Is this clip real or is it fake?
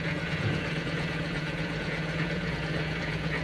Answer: fake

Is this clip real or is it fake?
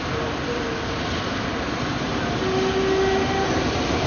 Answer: real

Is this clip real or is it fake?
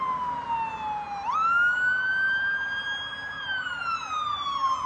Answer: real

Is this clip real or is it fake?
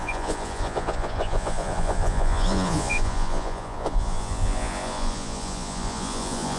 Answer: fake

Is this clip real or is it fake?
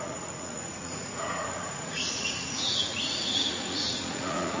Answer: fake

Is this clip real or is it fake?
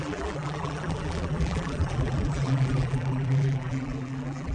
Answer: fake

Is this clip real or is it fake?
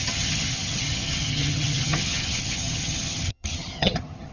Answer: fake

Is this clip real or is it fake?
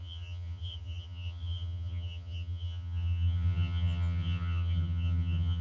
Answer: fake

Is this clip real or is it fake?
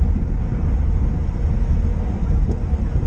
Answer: real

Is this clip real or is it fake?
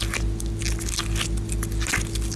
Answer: real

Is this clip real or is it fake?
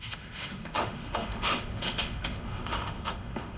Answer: fake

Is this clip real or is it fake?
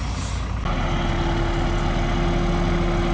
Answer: real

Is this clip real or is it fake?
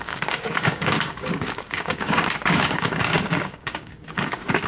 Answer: fake